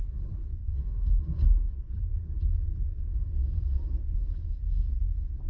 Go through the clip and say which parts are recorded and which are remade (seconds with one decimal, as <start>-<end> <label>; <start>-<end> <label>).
0.0-0.6 recorded; 0.6-1.2 remade; 1.2-5.5 recorded